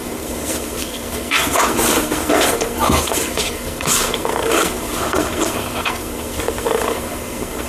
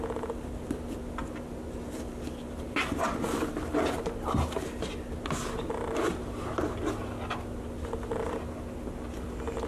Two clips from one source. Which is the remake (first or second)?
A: first